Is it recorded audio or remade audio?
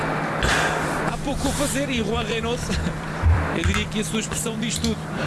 remade